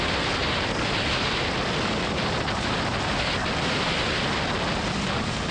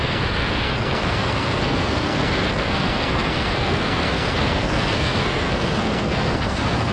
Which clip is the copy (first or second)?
second